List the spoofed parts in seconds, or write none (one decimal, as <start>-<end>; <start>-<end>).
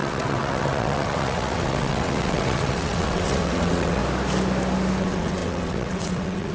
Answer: 0.0-4.0; 5.0-6.5